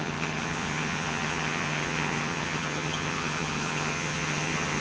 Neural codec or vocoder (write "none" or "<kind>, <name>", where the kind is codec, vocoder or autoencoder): vocoder, HiFi-GAN